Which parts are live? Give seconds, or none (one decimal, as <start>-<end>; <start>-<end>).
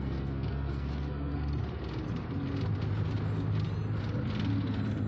1.6-5.1